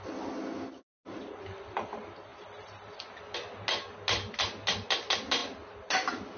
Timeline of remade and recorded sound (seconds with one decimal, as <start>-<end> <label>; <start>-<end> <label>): 0.0-6.4 recorded